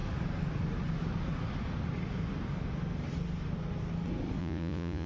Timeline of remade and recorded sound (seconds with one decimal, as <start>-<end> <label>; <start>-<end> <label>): 0.0-4.4 recorded; 4.4-5.1 remade